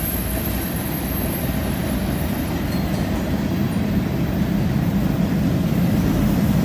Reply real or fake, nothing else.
real